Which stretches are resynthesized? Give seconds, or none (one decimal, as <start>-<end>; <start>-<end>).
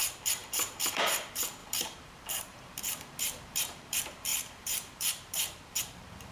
0.0-6.3